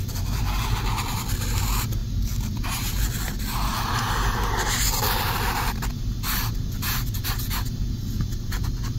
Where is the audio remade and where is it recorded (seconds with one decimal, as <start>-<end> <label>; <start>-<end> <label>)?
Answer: 0.0-9.0 recorded